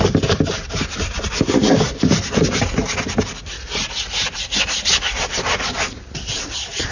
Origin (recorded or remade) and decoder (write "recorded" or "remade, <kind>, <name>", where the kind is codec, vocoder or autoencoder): recorded